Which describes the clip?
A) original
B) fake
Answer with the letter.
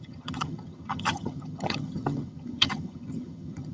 B